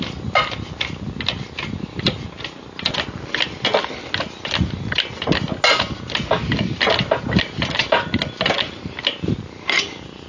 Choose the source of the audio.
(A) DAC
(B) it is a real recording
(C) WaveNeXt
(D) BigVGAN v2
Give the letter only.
B